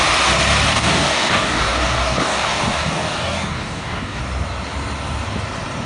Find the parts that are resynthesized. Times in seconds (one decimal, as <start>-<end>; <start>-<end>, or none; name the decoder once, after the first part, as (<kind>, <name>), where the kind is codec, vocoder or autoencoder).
0.7-4.2 (codec, DAC)